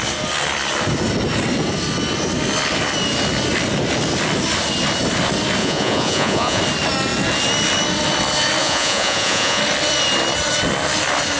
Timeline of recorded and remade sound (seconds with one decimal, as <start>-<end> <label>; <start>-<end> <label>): 0.0-5.6 recorded; 5.6-6.6 remade; 6.6-8.6 recorded; 8.6-9.6 remade; 9.6-11.4 recorded